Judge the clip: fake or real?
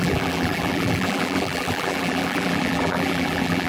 fake